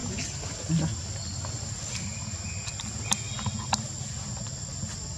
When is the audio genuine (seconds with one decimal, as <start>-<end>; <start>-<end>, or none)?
0.0-5.2